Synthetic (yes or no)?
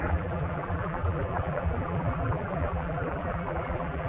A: yes